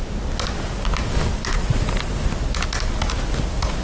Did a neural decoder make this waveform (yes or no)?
no